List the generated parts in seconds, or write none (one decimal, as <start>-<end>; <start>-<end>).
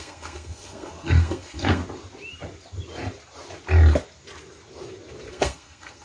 0.0-1.8; 5.3-6.0